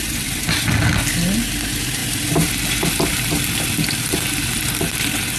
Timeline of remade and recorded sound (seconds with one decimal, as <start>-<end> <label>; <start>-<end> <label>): 0.0-5.4 recorded